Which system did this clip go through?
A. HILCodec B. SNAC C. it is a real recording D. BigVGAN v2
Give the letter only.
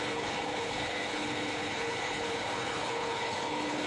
A